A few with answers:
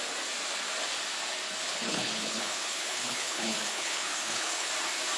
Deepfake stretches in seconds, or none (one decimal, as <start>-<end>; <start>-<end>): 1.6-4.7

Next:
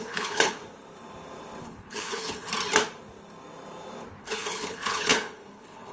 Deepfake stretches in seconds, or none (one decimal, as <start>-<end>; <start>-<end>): 0.0-0.6; 1.6-2.5; 4.2-5.9

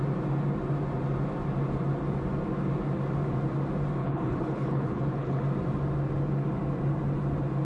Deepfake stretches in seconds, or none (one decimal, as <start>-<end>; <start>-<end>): 4.0-5.4

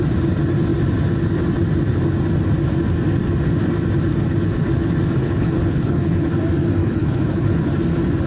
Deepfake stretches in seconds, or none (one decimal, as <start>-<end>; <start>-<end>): 5.2-6.3; 6.8-7.7

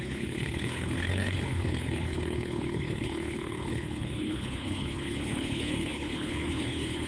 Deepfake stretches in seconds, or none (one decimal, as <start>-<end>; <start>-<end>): 0.0-7.1

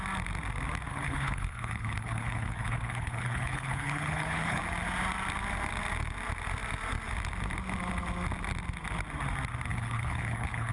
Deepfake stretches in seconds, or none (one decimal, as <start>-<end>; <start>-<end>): 0.9-4.6; 9.7-10.7